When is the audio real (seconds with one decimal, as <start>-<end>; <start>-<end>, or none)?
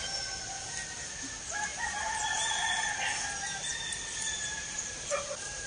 0.0-1.7; 2.3-3.7